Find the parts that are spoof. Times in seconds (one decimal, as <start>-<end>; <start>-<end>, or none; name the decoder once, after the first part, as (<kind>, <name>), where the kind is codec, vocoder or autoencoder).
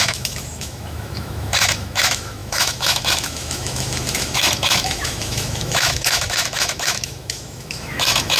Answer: 0.0-8.4 (autoencoder, DAC-VAE)